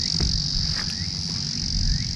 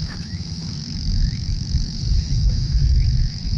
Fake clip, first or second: second